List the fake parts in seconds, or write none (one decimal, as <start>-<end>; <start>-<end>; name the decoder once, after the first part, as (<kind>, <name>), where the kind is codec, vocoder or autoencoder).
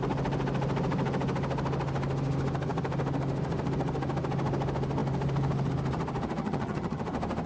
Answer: 6.4-7.0 (vocoder, HiFi-GAN)